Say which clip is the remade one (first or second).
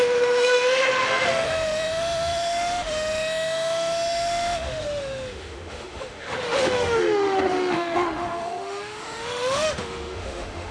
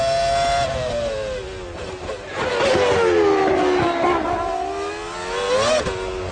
first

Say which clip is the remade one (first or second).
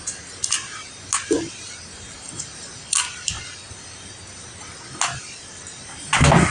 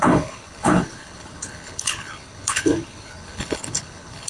second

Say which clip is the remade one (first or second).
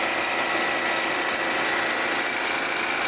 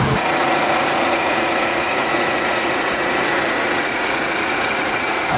second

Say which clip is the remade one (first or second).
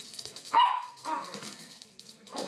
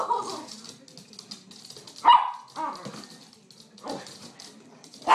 first